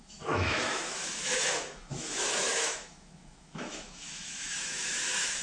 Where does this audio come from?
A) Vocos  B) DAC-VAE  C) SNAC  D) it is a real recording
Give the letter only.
B